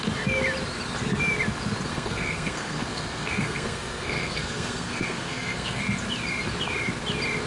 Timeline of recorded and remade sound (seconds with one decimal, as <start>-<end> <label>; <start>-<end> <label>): 0.0-1.9 recorded; 1.9-5.8 remade; 5.8-7.5 recorded